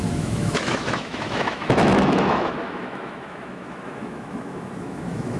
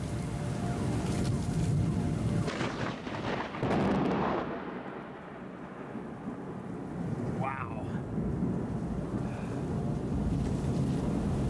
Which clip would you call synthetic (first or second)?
first